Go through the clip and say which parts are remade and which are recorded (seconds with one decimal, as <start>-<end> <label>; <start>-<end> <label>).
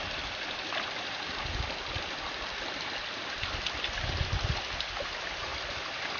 0.0-6.2 recorded